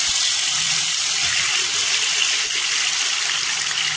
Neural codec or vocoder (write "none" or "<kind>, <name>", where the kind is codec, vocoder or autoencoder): none